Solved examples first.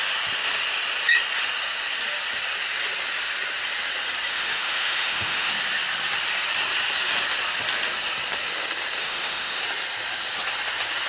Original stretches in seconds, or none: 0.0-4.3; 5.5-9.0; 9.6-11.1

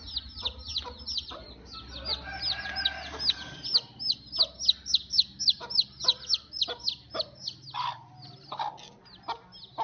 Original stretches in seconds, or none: 0.0-9.8

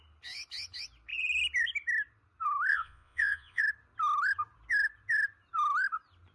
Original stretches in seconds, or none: 0.0-2.7; 3.6-6.3

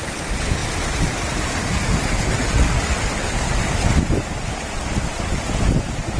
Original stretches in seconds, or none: 0.0-6.2